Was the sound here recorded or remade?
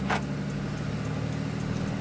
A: recorded